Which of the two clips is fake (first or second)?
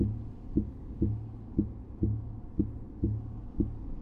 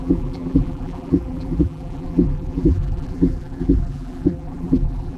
second